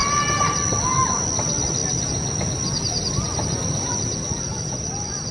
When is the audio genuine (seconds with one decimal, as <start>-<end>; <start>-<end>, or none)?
0.0-5.3